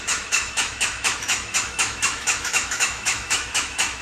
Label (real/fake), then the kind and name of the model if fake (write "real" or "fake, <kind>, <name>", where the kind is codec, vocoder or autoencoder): fake, autoencoder, DAC-VAE